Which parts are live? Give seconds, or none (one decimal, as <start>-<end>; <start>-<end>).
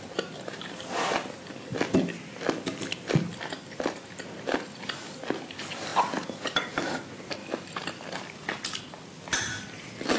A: 0.0-10.2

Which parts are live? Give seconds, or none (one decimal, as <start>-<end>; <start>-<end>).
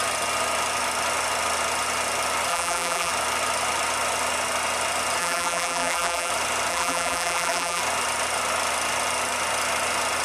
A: 0.0-2.5; 3.1-5.2; 6.3-6.7; 7.8-10.2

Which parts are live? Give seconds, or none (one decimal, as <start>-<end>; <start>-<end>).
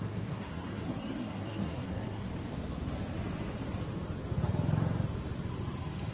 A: 2.3-6.1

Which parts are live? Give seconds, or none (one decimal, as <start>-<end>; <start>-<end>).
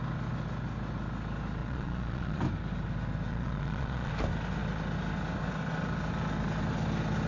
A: 0.0-1.6; 2.4-3.3; 4.1-7.3